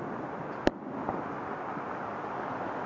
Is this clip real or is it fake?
real